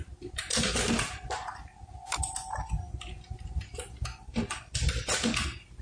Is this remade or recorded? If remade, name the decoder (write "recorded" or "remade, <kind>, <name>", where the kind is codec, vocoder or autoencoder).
recorded